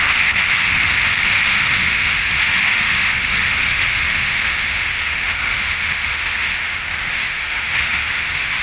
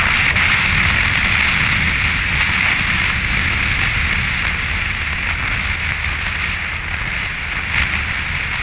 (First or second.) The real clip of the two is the second